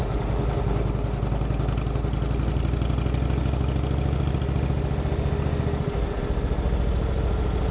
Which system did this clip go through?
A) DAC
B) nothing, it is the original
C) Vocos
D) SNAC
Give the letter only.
B